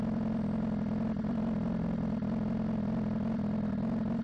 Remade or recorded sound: recorded